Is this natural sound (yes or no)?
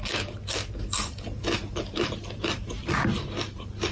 yes